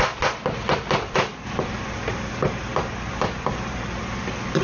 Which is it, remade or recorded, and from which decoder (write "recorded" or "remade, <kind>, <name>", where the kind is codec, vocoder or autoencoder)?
recorded